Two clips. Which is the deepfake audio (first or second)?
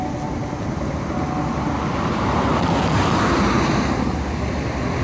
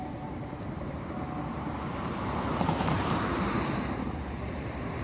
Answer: second